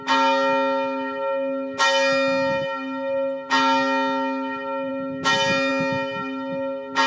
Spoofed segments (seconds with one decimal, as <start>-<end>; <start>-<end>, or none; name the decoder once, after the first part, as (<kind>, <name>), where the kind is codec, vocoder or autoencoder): none